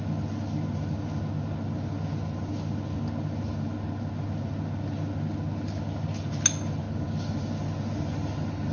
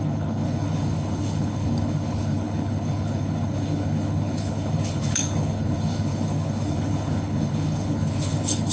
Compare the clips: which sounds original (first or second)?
first